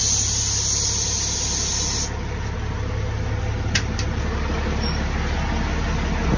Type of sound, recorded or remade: recorded